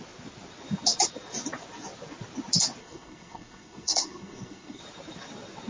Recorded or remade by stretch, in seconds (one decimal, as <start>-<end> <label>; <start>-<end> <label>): 0.0-2.8 recorded; 2.8-4.8 remade; 4.8-5.7 recorded